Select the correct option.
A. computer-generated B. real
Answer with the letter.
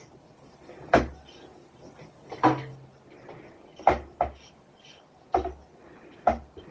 B